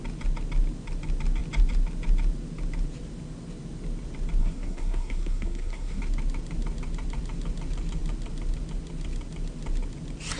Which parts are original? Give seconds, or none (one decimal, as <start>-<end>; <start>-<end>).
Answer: 0.0-4.4; 6.0-10.4